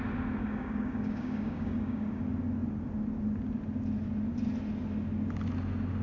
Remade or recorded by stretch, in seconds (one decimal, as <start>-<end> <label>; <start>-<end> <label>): 0.0-0.4 recorded; 0.4-2.2 remade; 2.2-6.0 recorded